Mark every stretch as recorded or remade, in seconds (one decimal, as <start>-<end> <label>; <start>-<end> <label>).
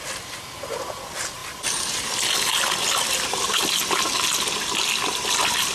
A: 0.0-5.7 recorded